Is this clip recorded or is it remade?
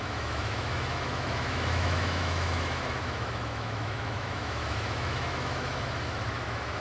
remade